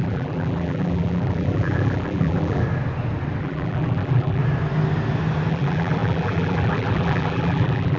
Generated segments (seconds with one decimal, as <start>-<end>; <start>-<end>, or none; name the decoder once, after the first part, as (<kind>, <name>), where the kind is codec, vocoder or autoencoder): 0.0-2.6 (vocoder, BigVGAN v2); 3.4-4.4; 5.5-8.0